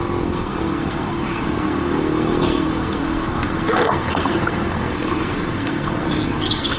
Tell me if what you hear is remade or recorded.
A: remade